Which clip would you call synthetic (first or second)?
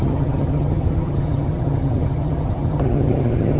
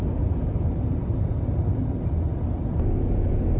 first